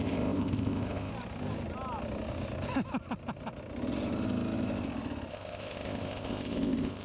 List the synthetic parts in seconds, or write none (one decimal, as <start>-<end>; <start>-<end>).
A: 0.0-1.1; 5.3-7.0